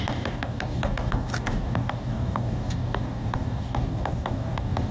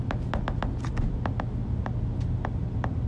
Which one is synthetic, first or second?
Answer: first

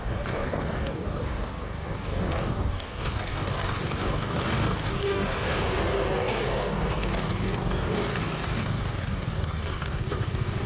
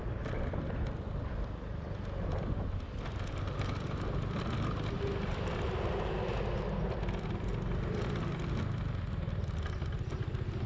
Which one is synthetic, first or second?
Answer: first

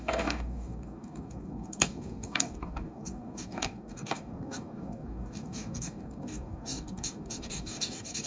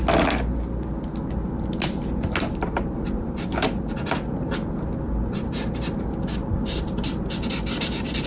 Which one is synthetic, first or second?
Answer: first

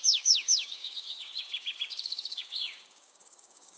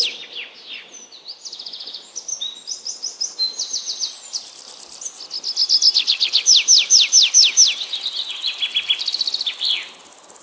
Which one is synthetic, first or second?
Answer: first